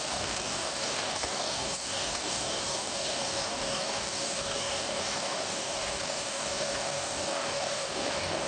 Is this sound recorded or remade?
remade